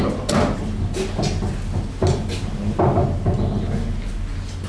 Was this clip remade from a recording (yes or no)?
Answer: no